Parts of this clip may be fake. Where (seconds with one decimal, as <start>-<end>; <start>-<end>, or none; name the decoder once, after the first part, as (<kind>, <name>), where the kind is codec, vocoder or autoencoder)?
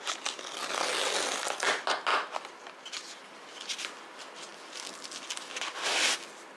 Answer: none